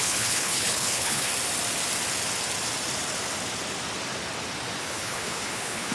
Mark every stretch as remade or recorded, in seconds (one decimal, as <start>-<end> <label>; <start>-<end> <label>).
0.0-1.3 remade; 1.3-4.8 recorded; 4.8-5.9 remade